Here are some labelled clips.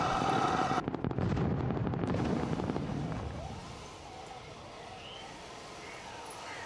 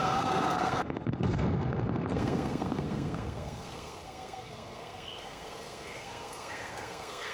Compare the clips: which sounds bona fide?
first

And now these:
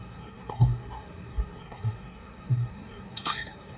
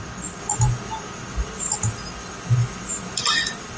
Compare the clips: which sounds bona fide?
second